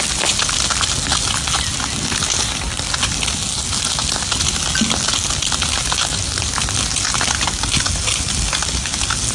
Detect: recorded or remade recorded